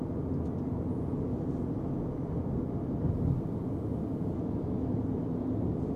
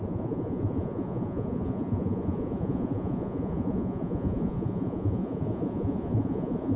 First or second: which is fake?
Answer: second